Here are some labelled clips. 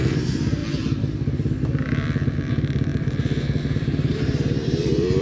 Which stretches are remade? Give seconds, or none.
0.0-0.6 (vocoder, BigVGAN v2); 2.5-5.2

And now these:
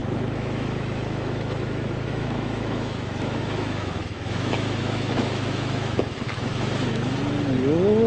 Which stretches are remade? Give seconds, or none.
0.0-7.2 (autoencoder, DAC-VAE)

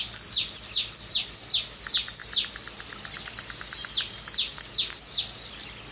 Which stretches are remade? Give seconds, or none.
none

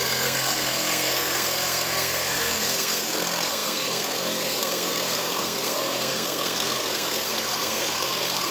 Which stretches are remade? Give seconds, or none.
0.0-8.5 (codec, SNAC)

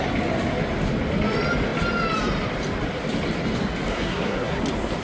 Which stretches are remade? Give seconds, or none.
3.9-4.6 (codec, SNAC)

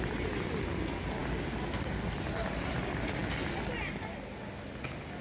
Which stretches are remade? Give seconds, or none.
none

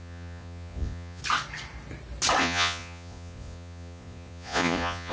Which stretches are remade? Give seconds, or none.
0.0-1.2 (vocoder, Vocos); 2.4-5.1